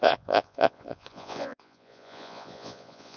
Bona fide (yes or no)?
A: no